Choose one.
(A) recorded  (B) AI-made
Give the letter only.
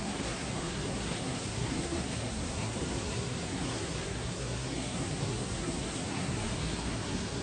B